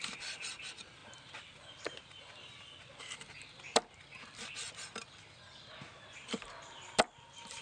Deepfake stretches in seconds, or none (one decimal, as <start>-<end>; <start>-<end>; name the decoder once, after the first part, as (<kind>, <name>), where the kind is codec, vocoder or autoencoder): none